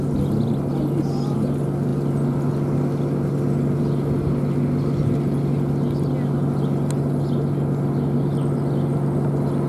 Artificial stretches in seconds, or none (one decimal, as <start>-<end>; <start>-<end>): none